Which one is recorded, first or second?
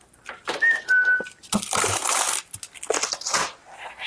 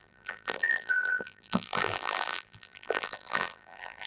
first